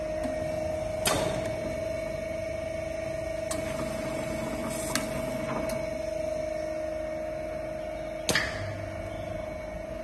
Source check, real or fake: real